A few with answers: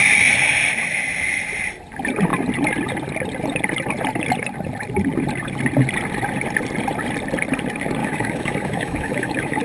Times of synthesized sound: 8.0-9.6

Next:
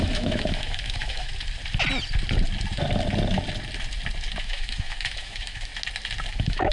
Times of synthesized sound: 0.0-1.3; 4.4-5.7; 6.3-6.7

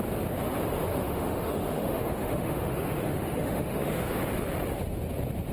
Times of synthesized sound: 0.9-4.2

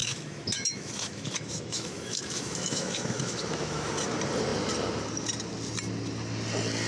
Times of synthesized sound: 0.0-3.9